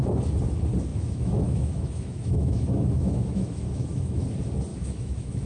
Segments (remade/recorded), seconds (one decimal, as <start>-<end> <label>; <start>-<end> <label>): 0.0-0.9 recorded; 0.9-4.2 remade; 4.2-4.7 recorded; 4.7-5.5 remade